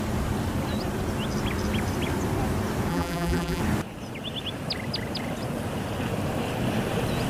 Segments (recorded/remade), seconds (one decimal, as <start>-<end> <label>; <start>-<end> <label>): 0.0-2.9 recorded; 2.9-3.6 remade; 3.6-7.3 recorded